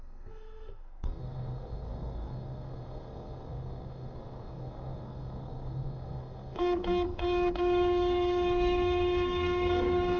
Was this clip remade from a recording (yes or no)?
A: yes